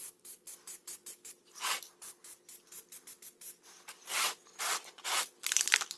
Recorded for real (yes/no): yes